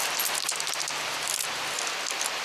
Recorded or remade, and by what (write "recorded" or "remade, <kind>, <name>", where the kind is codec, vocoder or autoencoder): recorded